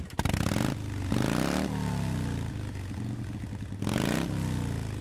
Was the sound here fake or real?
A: real